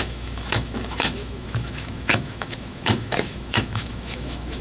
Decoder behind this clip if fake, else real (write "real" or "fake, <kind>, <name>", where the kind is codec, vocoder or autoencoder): fake, autoencoder, DAC-VAE